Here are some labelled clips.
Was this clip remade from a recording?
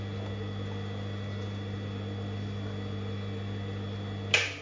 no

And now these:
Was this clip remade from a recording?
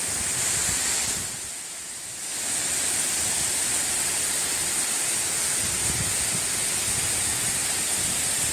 no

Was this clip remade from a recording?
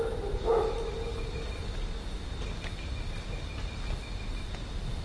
no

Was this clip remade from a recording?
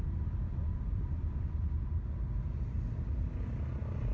no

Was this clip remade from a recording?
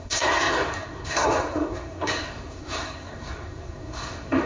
yes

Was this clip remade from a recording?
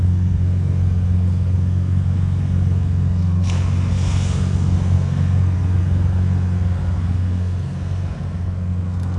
yes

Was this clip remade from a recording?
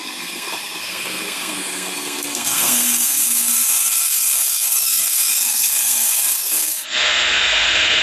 yes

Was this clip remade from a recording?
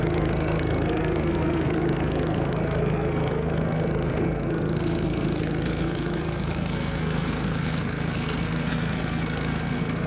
yes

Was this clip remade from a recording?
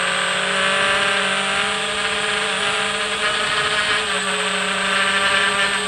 no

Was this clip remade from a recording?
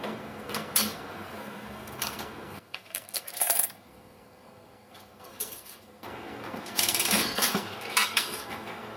yes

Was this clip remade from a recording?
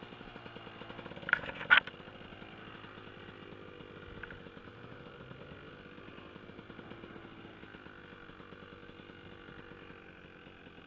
no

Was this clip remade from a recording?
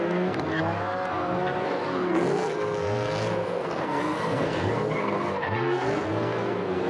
yes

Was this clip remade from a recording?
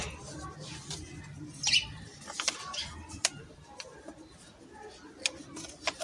no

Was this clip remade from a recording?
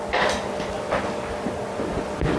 no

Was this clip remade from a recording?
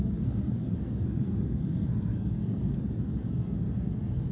yes